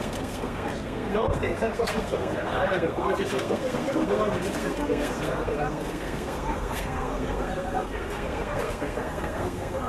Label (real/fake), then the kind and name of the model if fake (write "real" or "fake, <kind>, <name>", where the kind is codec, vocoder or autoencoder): fake, codec, SNAC